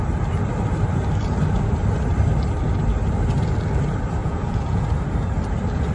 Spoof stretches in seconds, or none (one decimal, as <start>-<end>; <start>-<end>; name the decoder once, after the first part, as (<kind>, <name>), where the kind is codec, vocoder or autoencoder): 4.2-4.8 (vocoder, Vocos)